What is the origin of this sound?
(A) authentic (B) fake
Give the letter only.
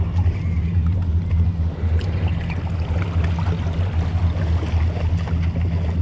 A